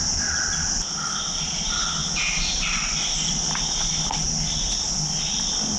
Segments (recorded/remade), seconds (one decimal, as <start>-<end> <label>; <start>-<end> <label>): 0.0-5.8 recorded